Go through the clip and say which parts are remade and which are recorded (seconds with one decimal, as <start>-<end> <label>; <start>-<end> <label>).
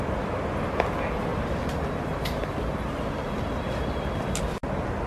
0.0-5.1 recorded